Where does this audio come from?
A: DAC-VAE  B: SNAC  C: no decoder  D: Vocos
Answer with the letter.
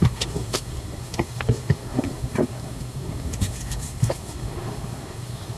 B